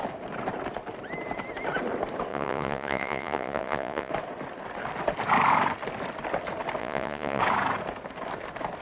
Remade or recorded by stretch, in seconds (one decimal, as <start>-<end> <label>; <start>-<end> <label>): 0.0-2.3 recorded; 2.3-4.1 remade; 4.1-6.8 recorded; 6.8-7.4 remade; 7.4-8.8 recorded